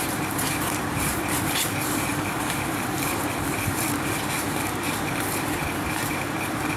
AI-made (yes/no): yes